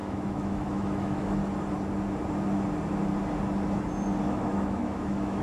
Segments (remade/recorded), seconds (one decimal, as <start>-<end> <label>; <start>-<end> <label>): 0.0-1.4 remade; 1.4-4.2 recorded; 4.2-5.4 remade